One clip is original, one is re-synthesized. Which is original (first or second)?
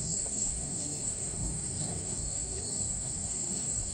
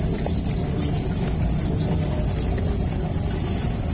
second